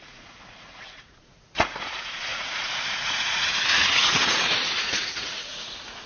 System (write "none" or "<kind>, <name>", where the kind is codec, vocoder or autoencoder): vocoder, Vocos